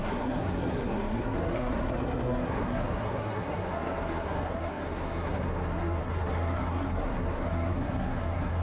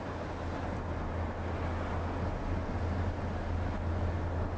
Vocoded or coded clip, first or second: first